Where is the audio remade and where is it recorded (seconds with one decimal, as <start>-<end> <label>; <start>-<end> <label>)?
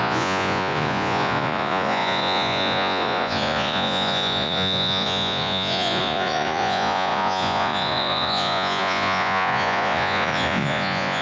0.0-11.2 remade